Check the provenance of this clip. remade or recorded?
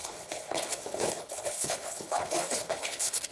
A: remade